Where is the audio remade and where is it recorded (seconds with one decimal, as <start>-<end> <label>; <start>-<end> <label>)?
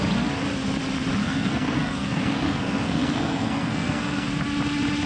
0.0-1.2 recorded; 1.2-4.3 remade; 4.3-5.1 recorded